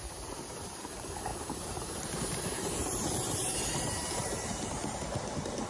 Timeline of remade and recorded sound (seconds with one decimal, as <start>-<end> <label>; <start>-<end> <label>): 0.0-5.7 remade